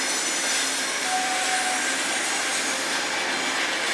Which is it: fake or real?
real